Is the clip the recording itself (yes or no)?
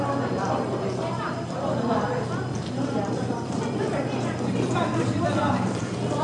no